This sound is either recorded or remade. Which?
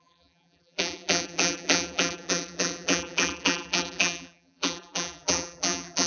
remade